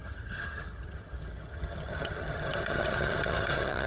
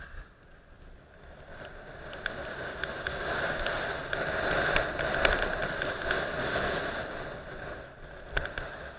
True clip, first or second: second